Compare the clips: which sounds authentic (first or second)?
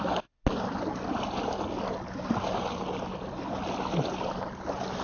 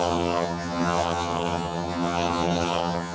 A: first